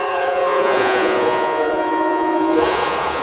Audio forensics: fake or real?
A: fake